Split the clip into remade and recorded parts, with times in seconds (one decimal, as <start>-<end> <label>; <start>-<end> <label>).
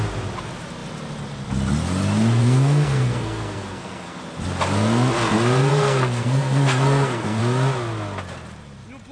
0.0-2.4 recorded; 2.4-4.2 remade; 4.2-5.7 recorded; 5.7-7.4 remade; 7.4-9.1 recorded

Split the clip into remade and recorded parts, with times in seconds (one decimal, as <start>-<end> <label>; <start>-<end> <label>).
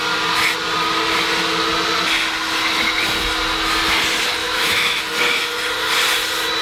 0.0-4.4 recorded; 4.4-5.0 remade; 5.0-6.6 recorded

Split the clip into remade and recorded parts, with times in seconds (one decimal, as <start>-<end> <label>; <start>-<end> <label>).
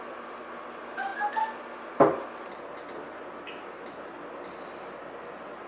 0.0-5.7 recorded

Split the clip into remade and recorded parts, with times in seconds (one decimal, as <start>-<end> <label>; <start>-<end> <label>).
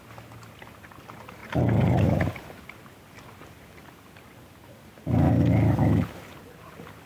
0.0-7.1 recorded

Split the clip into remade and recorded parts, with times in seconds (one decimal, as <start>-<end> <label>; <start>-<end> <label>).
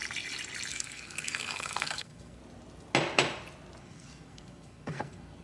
0.0-0.7 recorded; 0.7-2.4 remade; 2.4-3.8 recorded; 3.8-5.4 remade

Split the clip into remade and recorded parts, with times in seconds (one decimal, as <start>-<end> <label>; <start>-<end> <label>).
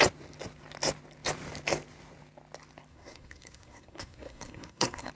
0.0-2.9 recorded; 2.9-5.1 remade